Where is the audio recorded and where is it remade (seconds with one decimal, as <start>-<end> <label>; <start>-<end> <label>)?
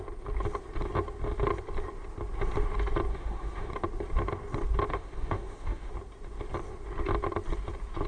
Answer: 0.0-3.1 recorded; 3.1-3.7 remade; 3.7-4.9 recorded; 4.9-5.9 remade; 5.9-8.1 recorded